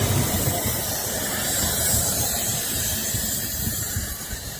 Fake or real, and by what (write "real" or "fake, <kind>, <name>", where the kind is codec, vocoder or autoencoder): fake, vocoder, BigVGAN v2